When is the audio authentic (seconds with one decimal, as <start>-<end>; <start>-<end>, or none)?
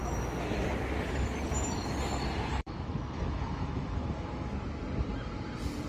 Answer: 0.0-2.5; 4.5-5.9